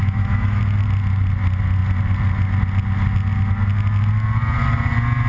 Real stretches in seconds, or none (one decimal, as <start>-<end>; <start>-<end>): 0.6-5.3

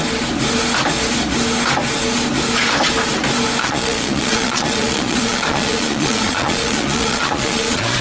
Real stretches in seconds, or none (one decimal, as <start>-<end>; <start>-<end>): 0.0-3.6

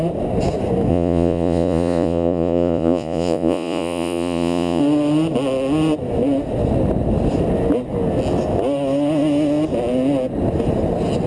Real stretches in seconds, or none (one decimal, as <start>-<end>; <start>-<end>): 0.0-0.9; 4.8-11.3

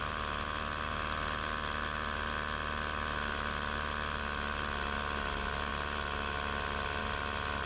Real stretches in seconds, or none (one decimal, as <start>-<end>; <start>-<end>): 0.0-7.7

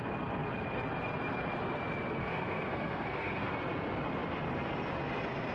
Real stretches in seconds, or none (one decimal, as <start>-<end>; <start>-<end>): 0.0-2.2; 3.5-5.5

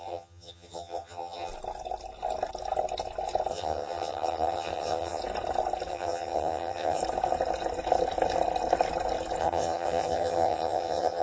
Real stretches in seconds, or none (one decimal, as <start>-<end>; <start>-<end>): 1.5-3.5; 5.2-5.9; 7.0-9.4

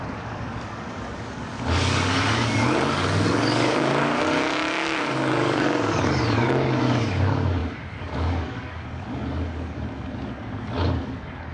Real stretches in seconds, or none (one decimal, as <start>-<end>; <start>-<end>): none

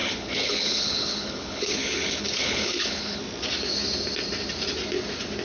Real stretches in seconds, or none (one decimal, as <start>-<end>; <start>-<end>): 3.2-5.4